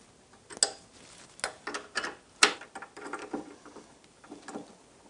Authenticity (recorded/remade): recorded